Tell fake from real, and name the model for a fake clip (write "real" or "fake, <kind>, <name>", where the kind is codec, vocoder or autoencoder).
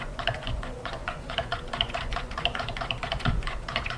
fake, vocoder, Vocos